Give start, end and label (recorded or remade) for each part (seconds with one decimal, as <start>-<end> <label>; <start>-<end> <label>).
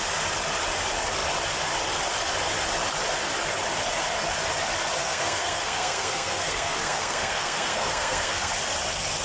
0.0-5.0 recorded; 5.0-8.5 remade; 8.5-9.2 recorded